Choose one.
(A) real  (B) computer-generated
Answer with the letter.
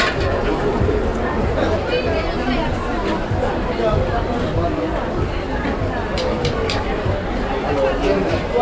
A